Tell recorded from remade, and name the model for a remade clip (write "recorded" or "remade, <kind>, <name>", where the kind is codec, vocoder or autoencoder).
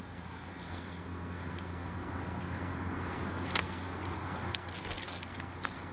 remade, codec, SNAC